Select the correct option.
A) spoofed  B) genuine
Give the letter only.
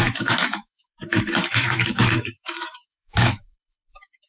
A